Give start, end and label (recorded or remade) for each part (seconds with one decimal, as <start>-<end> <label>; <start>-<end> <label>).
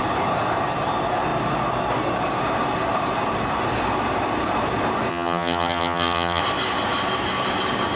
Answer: 0.0-5.1 recorded; 5.1-6.4 remade; 6.4-8.0 recorded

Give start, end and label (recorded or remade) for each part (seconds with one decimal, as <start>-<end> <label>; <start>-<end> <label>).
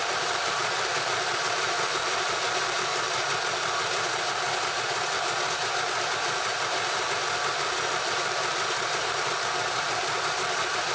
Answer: 0.0-2.9 remade; 2.9-7.9 recorded; 7.9-8.4 remade; 8.4-9.8 recorded; 9.8-10.9 remade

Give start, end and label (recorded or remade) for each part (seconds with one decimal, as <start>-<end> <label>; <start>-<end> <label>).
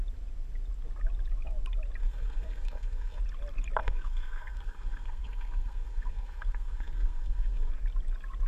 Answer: 0.0-2.0 recorded; 2.0-3.2 remade; 3.2-3.8 recorded; 3.8-7.7 remade; 7.7-8.5 recorded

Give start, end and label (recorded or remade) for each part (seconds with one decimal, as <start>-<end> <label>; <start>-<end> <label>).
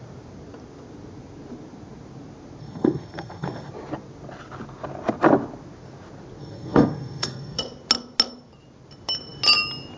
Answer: 0.0-2.6 recorded; 2.6-3.7 remade; 3.7-6.4 recorded; 6.4-7.6 remade; 7.6-10.0 recorded